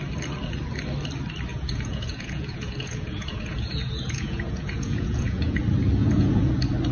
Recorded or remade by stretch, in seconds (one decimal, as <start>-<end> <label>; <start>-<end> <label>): 0.0-1.5 recorded; 1.5-5.6 remade; 5.6-6.0 recorded; 6.0-6.5 remade; 6.5-6.9 recorded